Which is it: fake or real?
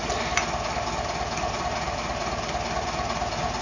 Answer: real